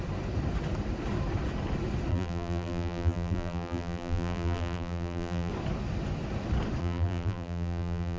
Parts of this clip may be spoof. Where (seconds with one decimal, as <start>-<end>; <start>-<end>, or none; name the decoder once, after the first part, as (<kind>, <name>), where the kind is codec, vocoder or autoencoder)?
2.1-5.5 (vocoder, BigVGAN v2); 6.8-8.2